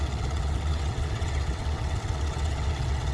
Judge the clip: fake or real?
fake